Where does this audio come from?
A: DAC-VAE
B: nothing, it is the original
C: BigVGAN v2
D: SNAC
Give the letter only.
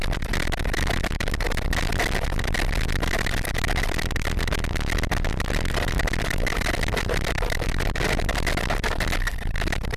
B